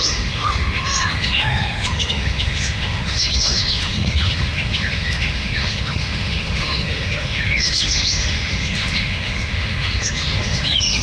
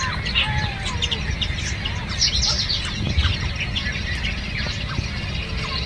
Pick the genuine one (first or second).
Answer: second